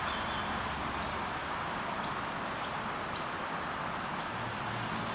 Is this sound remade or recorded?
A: recorded